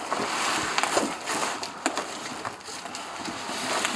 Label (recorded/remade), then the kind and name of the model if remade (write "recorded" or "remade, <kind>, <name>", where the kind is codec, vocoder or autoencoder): recorded